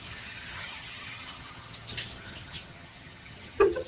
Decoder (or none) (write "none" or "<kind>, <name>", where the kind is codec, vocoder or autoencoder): vocoder, HiFi-GAN